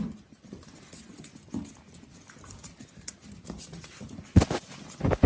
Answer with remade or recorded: recorded